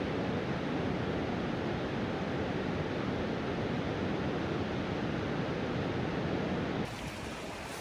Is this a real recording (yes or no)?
yes